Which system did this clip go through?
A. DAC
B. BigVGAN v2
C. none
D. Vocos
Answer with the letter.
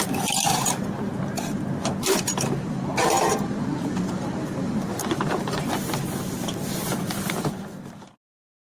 B